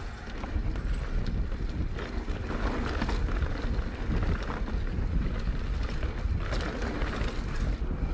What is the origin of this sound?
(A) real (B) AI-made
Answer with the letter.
A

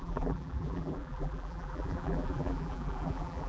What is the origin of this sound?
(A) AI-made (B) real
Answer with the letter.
A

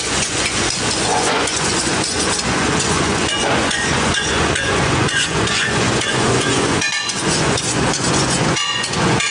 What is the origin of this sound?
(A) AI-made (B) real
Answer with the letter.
A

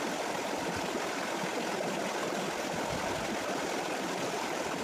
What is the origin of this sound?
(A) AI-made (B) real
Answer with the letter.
B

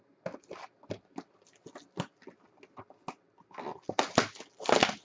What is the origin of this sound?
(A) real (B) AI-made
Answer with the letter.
A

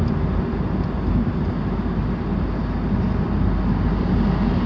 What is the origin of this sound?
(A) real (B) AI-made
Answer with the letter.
A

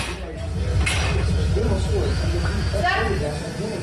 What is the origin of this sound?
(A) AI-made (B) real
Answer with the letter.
B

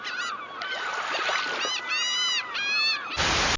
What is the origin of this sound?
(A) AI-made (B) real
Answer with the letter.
B